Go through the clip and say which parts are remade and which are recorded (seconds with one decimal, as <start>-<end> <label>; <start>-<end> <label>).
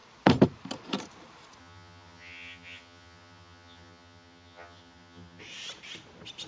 0.0-1.6 recorded; 1.6-5.4 remade; 5.4-6.5 recorded